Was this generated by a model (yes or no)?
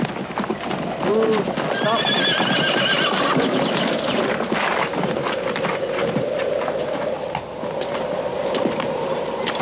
no